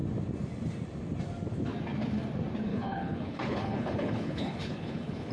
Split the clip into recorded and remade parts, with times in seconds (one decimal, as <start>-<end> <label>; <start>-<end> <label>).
0.0-2.7 recorded; 2.7-5.3 remade